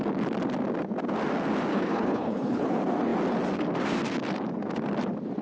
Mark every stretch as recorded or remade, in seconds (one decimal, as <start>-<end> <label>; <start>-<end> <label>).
0.0-1.7 recorded; 1.7-2.7 remade; 2.7-5.4 recorded